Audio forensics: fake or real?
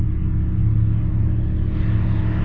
real